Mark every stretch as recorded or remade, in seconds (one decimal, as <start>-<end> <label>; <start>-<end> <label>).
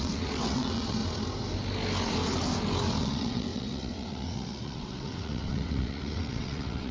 0.0-1.0 remade; 1.0-3.0 recorded; 3.0-6.9 remade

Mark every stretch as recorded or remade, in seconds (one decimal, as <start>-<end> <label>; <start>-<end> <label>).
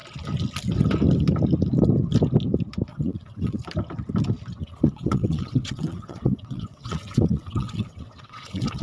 0.0-2.9 recorded; 2.9-3.6 remade; 3.6-4.6 recorded; 4.6-8.8 remade